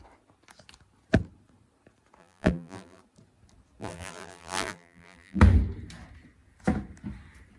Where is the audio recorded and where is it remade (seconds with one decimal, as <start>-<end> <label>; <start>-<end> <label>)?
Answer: 0.0-2.2 recorded; 2.2-3.0 remade; 3.0-3.8 recorded; 3.8-5.4 remade; 5.4-7.6 recorded